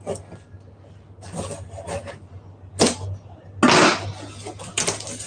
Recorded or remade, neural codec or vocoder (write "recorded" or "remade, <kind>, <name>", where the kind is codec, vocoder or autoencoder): recorded